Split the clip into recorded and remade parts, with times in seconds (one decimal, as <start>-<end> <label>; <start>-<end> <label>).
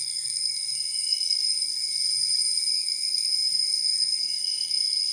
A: 0.0-1.9 remade; 1.9-2.7 recorded; 2.7-5.1 remade